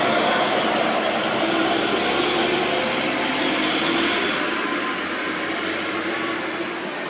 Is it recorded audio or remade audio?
recorded